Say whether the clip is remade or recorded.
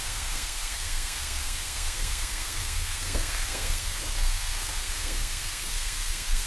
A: remade